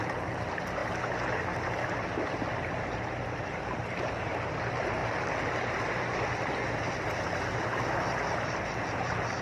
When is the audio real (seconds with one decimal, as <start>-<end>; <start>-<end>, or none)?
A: 0.0-9.4